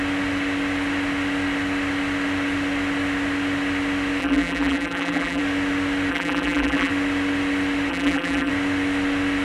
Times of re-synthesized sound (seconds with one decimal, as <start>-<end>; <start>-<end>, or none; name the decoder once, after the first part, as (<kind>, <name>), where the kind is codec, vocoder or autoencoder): 4.2-5.4 (vocoder, BigVGAN v2); 6.1-6.9; 7.9-8.5